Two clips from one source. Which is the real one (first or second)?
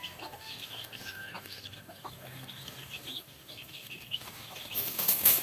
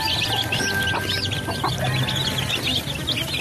second